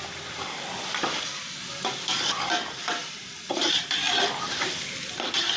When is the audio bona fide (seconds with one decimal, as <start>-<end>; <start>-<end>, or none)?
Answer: 3.0-3.8